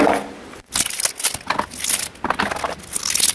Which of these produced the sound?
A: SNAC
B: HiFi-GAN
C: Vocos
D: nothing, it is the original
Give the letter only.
D